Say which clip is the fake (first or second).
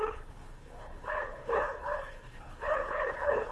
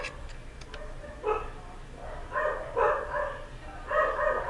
first